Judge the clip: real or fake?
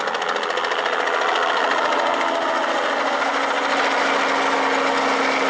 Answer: real